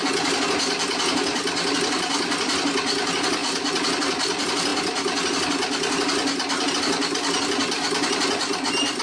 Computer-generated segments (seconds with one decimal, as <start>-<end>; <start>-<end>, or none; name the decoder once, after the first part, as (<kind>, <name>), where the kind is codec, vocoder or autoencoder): none